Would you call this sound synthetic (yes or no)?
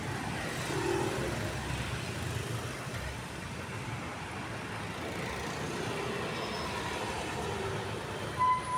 no